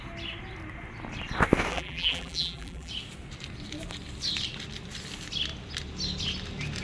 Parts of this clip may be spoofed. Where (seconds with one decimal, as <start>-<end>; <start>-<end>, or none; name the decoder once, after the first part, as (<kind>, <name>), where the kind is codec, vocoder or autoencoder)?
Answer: 1.7-2.9 (vocoder, BigVGAN v2)